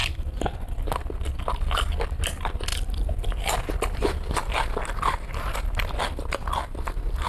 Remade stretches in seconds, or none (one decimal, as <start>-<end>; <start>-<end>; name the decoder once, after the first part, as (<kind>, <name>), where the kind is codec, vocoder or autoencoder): none